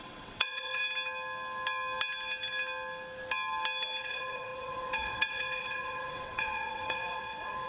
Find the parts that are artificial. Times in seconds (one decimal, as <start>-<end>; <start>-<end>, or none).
0.0-0.8; 4.0-7.7